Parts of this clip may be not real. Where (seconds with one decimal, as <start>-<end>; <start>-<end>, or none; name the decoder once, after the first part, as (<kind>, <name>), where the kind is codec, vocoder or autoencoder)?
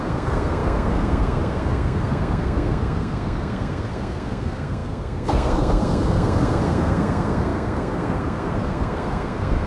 0.0-9.7 (codec, SNAC)